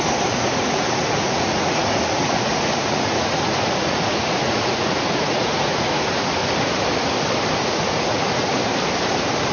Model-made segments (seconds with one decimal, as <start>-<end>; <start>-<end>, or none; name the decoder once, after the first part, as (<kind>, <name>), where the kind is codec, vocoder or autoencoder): 0.0-6.4 (vocoder, Vocos); 7.6-8.6